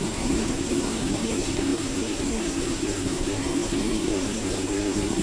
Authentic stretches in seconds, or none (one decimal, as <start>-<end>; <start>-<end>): none

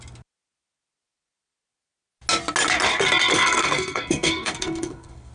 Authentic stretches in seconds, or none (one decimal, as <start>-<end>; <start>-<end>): 0.0-3.3

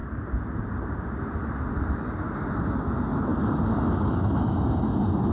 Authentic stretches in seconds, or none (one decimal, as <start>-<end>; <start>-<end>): 0.0-5.3

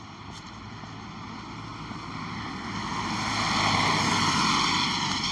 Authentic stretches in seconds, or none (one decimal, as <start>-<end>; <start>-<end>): 0.0-5.3